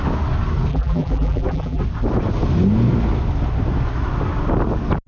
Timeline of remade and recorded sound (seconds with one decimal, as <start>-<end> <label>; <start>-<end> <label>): 0.0-0.7 recorded; 0.7-1.8 remade; 1.8-5.1 recorded